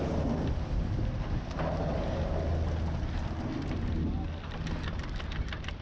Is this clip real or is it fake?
real